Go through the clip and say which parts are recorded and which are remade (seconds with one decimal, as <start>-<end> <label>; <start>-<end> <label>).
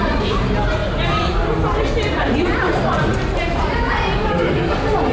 0.0-0.8 remade; 0.8-1.8 recorded; 1.8-3.1 remade; 3.1-4.2 recorded; 4.2-5.1 remade